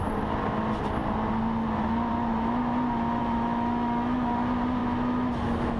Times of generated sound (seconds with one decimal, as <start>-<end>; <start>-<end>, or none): 3.2-4.3; 4.8-5.3